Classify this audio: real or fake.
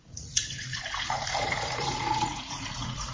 fake